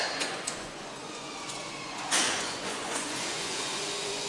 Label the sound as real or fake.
fake